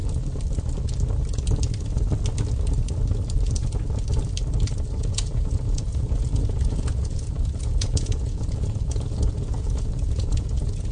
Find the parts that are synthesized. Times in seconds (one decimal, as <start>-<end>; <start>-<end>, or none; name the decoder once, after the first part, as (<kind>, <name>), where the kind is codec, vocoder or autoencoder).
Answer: 5.0-10.9 (vocoder, Vocos)